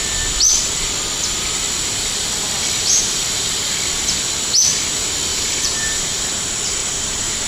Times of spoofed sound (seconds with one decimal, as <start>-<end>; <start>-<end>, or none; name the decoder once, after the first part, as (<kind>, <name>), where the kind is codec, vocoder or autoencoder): 5.3-6.2 (vocoder, BigVGAN v2); 6.8-7.5